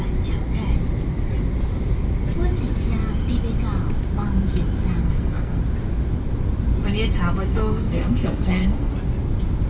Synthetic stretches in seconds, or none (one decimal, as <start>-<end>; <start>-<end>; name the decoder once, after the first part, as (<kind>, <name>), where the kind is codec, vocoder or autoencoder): 5.0-5.6 (codec, SNAC); 7.5-8.9

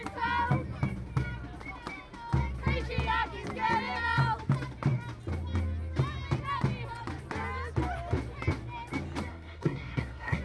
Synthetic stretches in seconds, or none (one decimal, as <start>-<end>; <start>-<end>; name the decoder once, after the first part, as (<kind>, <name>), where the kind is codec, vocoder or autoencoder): 9.3-10.4 (codec, SNAC)

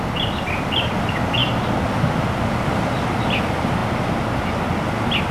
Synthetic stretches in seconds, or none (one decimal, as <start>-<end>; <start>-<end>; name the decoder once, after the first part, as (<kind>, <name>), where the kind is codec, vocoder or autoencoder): none

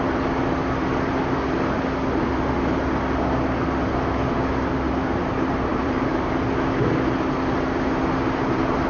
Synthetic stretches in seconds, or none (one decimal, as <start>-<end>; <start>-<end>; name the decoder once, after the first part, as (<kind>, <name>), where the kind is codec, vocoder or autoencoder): 5.7-6.3 (vocoder, BigVGAN v2)

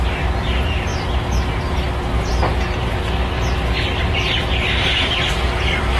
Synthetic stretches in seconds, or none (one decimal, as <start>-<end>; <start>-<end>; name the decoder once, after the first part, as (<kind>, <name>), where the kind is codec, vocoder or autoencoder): none

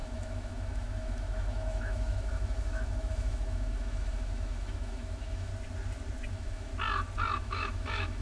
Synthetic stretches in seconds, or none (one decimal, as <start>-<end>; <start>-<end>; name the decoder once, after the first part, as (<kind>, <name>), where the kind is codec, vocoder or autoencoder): 0.0-5.5 (autoencoder, DAC-VAE); 6.3-6.7; 7.4-8.2